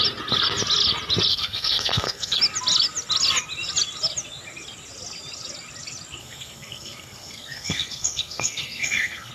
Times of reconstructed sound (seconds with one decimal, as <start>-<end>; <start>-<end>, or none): 1.3-2.4; 6.2-9.3